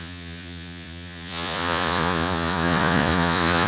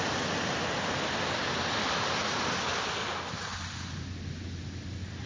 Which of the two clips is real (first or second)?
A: second